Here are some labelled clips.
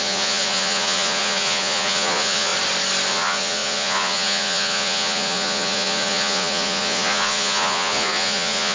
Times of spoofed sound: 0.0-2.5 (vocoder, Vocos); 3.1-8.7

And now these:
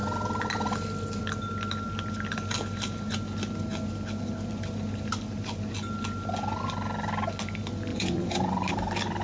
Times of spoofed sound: 7.9-8.7 (vocoder, Vocos)

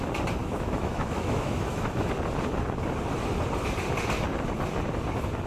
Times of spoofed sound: 0.4-2.1 (autoencoder, DAC-VAE)